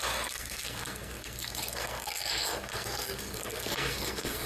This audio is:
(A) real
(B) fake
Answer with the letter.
B